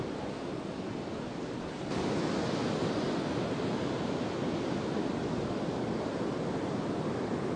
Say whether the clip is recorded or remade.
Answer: recorded